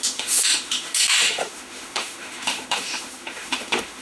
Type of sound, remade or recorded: remade